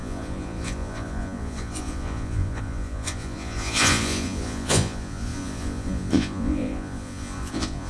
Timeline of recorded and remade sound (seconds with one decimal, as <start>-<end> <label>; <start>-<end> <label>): 0.0-7.9 remade

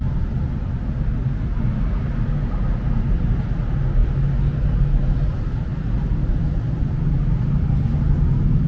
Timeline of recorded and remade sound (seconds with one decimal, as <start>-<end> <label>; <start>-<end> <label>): 0.0-8.7 recorded

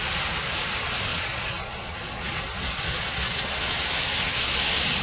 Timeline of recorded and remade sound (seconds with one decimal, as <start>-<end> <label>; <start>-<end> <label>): 0.0-1.1 recorded; 1.1-3.6 remade; 3.6-5.0 recorded

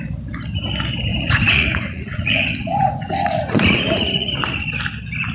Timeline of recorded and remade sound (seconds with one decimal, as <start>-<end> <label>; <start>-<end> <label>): 0.0-1.1 recorded; 1.1-4.3 remade; 4.3-5.3 recorded

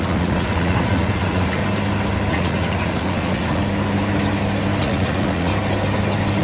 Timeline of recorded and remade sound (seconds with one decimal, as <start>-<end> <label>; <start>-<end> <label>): 0.0-1.6 remade; 1.6-2.3 recorded; 2.3-3.6 remade; 3.6-4.8 recorded; 4.8-5.5 remade; 5.5-6.4 recorded

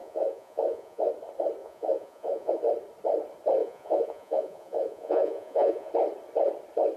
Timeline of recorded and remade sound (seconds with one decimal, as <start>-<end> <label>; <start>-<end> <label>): 0.0-1.1 remade; 1.1-1.6 recorded; 1.6-2.6 remade; 2.6-3.6 recorded; 3.6-5.9 remade; 5.9-7.0 recorded

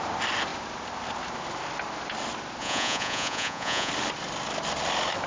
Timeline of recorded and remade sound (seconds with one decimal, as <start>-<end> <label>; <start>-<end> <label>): 0.0-2.6 recorded; 2.6-3.9 remade; 3.9-5.3 recorded